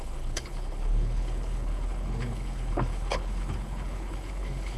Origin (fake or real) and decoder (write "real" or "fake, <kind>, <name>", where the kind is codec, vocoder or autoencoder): fake, codec, HILCodec